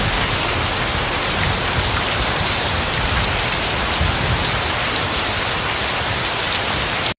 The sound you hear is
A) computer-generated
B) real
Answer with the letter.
B